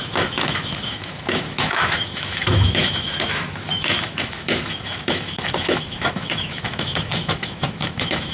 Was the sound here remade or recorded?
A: remade